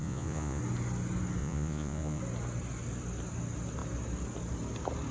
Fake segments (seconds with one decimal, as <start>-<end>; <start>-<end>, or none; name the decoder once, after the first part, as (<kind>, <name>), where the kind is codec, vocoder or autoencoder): 0.0-0.6 (vocoder, Vocos); 1.4-2.2